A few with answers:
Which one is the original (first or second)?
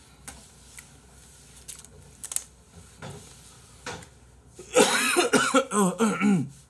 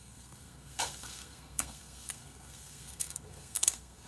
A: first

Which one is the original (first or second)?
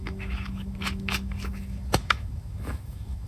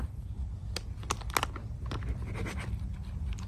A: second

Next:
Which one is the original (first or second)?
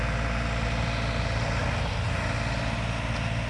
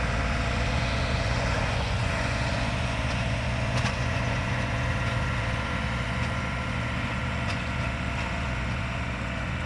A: first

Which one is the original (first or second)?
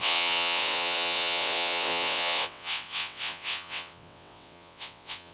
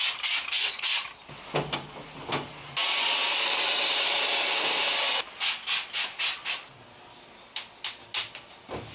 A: second